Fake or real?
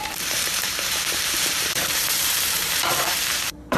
fake